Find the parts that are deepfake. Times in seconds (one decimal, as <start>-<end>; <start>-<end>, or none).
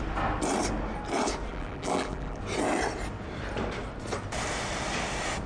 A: 1.5-2.4